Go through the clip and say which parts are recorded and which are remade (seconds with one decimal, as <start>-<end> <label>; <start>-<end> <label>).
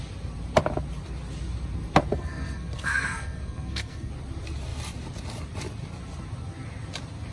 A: 0.0-2.1 recorded; 2.1-4.1 remade; 4.1-7.3 recorded